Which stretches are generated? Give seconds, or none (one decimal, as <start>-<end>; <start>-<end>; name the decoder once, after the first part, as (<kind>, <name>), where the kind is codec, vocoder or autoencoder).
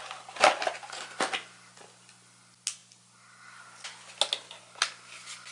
none